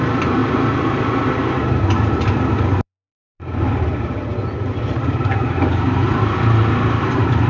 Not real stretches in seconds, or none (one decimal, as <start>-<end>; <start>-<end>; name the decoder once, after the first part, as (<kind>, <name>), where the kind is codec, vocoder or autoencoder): 0.0-0.4 (vocoder, BigVGAN v2); 2.1-4.3; 4.9-7.5